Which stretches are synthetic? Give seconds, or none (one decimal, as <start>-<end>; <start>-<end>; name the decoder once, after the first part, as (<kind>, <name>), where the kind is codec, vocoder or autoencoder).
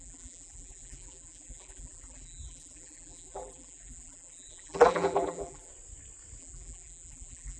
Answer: 0.0-5.7 (vocoder, BigVGAN v2); 6.4-7.6